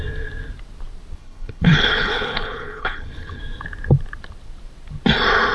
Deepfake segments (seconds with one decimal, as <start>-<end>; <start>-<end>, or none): 1.2-3.4